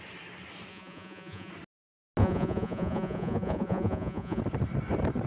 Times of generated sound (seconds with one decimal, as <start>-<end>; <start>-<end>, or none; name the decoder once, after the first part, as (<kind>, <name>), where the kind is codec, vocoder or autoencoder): 0.7-1.5 (vocoder, Vocos); 2.2-4.4